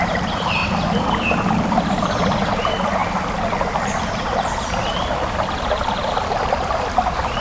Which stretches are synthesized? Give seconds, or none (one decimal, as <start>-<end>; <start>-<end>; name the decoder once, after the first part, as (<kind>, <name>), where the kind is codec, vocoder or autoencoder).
0.0-0.6 (vocoder, BigVGAN v2); 1.3-3.0; 3.9-7.4